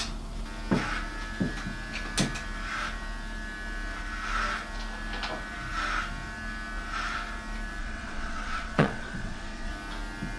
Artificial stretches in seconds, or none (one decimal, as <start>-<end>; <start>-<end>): 7.8-9.7